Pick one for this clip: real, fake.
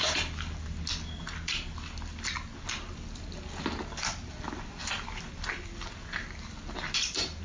real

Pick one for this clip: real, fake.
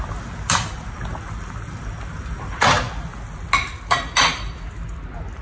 real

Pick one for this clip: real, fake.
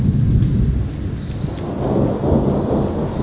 real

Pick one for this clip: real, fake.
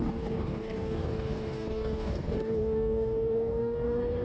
fake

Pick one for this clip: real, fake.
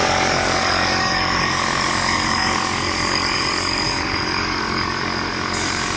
fake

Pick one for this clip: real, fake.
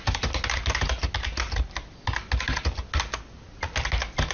real